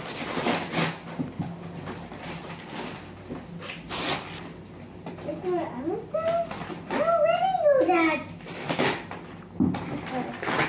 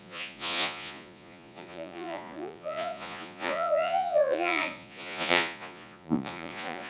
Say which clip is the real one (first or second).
first